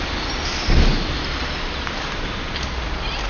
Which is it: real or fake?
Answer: real